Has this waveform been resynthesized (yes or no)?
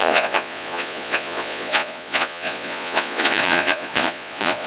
yes